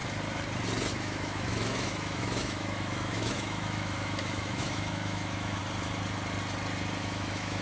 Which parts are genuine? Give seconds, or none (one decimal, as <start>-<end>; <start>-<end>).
0.0-0.9; 5.6-7.0